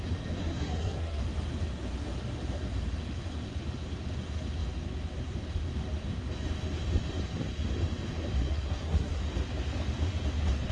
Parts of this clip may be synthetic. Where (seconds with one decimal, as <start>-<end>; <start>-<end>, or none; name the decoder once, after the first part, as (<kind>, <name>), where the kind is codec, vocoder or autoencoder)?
0.4-1.2 (codec, SNAC); 8.4-9.2